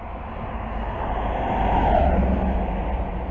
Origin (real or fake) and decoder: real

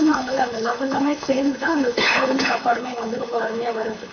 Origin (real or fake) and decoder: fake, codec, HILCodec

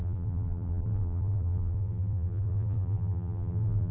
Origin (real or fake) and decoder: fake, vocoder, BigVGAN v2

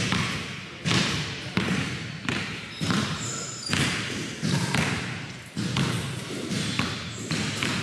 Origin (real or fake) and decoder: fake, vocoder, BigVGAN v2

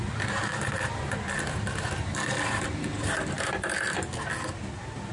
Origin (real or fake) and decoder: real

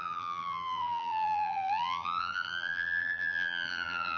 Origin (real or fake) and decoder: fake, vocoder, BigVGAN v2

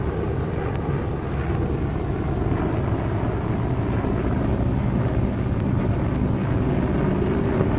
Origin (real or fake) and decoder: real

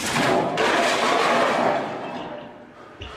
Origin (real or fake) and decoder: real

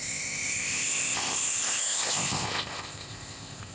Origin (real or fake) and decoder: fake, codec, ZipCodec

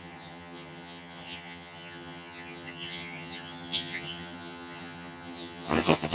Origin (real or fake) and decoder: fake, vocoder, HiFi-GAN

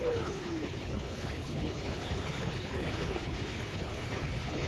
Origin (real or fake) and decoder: fake, codec, HILCodec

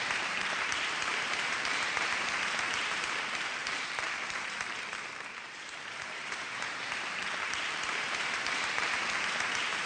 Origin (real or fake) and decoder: fake, vocoder, BigVGAN v2